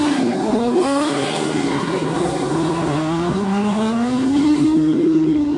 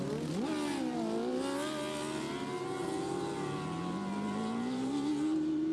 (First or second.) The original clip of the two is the second